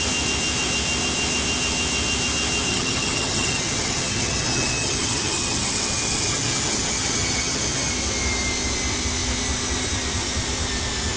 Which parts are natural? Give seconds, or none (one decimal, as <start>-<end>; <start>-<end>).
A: 0.0-2.7; 7.9-11.2